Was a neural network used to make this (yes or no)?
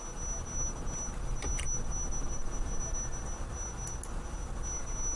no